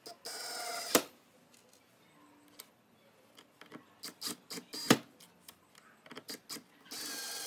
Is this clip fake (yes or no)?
no